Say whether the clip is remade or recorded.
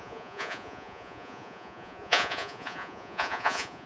remade